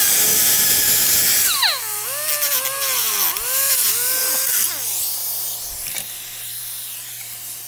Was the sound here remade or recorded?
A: recorded